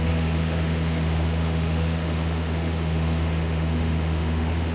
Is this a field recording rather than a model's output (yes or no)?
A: no